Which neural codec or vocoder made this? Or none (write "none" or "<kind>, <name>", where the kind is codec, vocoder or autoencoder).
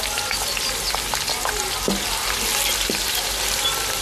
none